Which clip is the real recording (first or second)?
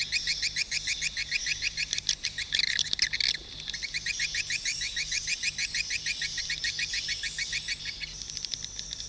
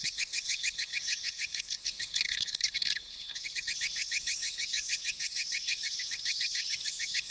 first